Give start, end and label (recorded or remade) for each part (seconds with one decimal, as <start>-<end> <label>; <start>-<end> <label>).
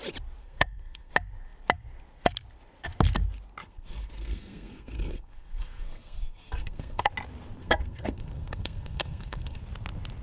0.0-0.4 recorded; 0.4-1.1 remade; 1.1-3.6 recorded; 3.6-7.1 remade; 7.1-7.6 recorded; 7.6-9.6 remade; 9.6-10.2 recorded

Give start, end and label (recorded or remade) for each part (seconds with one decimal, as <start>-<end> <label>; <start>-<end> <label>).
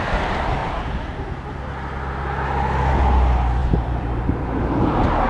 0.0-0.6 recorded; 0.6-1.3 remade; 1.3-3.6 recorded; 3.6-4.4 remade; 4.4-5.3 recorded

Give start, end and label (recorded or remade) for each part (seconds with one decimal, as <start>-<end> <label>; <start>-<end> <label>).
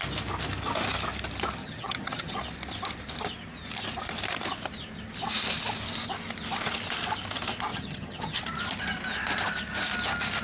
0.0-1.6 recorded; 1.6-2.4 remade; 2.4-7.7 recorded; 7.7-8.4 remade; 8.4-10.4 recorded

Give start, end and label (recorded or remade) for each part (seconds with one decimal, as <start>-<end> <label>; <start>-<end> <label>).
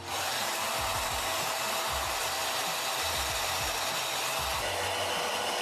0.0-5.6 recorded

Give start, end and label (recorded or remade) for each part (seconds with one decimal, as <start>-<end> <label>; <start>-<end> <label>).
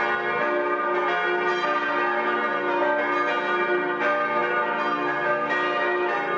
0.0-6.4 recorded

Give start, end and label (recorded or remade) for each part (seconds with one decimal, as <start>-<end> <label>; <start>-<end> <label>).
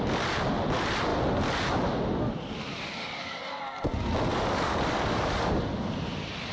0.0-3.0 recorded; 3.0-3.6 remade; 3.6-4.3 recorded; 4.3-5.5 remade; 5.5-6.5 recorded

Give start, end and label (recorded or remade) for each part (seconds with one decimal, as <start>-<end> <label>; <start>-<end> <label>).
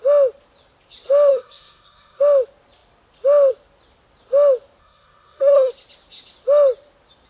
0.0-1.3 recorded; 1.3-2.2 remade; 2.2-4.8 recorded; 4.8-5.7 remade; 5.7-7.3 recorded